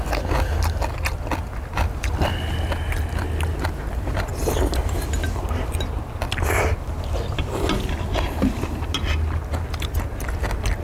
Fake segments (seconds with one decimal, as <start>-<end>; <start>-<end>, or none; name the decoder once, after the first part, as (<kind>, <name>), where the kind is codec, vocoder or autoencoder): none